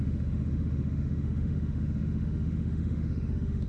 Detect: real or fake fake